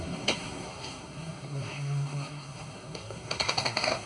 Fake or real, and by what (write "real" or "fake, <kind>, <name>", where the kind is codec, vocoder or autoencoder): fake, codec, SNAC